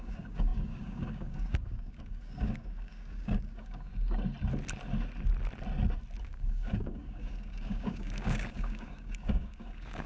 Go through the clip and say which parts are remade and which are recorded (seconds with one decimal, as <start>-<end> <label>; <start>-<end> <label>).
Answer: 0.0-3.9 remade; 3.9-6.2 recorded; 6.2-10.1 remade